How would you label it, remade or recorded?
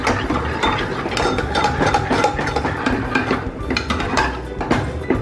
recorded